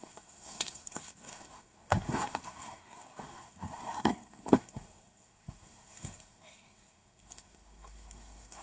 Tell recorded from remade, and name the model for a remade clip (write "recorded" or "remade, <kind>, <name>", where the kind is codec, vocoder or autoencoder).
remade, codec, SNAC